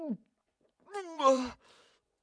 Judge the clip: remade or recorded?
remade